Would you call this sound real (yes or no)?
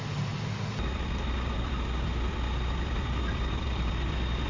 yes